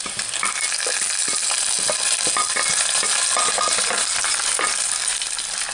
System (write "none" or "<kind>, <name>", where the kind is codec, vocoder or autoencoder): none